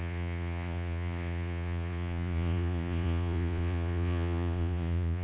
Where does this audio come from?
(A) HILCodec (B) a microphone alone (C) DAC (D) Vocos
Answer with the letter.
D